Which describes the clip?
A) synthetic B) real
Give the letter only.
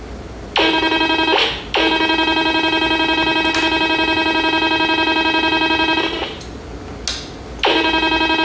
B